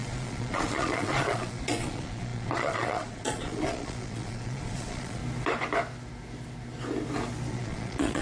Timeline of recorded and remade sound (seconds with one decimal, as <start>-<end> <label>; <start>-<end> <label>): 0.0-5.2 remade; 5.2-7.5 recorded; 7.5-8.2 remade